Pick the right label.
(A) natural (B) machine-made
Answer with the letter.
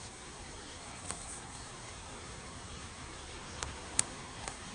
B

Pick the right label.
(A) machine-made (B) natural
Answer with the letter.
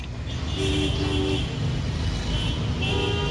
B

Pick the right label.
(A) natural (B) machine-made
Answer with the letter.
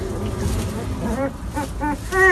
A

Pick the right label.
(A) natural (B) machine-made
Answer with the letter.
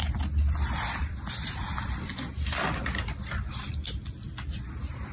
B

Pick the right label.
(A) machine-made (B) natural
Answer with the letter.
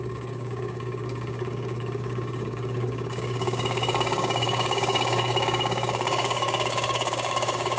A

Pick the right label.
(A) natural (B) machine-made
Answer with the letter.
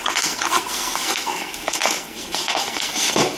B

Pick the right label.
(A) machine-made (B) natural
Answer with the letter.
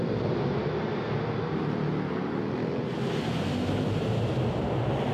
B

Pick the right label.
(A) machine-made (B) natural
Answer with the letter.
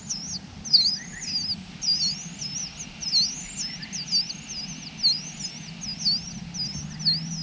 B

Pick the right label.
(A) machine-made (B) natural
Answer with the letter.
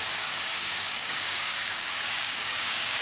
A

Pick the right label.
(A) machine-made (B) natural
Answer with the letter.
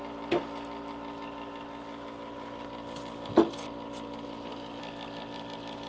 B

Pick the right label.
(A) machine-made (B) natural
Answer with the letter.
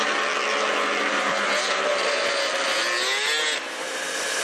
B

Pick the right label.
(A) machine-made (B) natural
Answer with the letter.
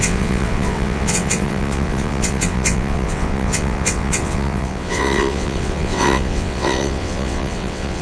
A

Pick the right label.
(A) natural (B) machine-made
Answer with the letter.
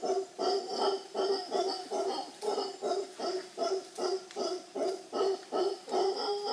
A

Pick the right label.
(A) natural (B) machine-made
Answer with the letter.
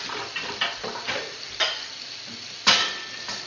A